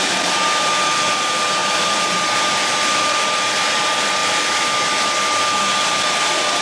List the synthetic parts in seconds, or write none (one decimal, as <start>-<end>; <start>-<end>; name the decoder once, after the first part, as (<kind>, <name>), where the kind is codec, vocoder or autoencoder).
1.6-2.6 (vocoder, BigVGAN v2)